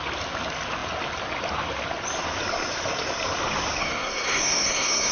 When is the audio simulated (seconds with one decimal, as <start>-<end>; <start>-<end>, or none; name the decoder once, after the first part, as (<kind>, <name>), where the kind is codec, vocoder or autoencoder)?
3.8-5.1 (codec, SNAC)